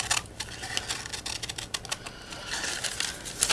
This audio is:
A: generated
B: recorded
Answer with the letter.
B